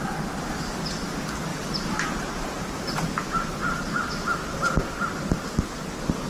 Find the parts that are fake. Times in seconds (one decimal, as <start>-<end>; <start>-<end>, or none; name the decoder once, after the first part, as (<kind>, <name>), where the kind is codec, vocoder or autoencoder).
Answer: 1.5-4.1 (vocoder, BigVGAN v2)